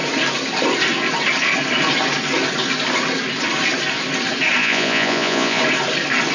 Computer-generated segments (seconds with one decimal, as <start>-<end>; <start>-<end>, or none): 4.6-5.6